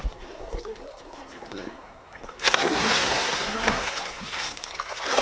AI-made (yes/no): yes